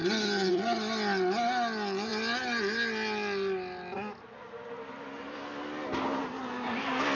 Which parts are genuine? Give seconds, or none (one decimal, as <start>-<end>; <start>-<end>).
0.0-7.1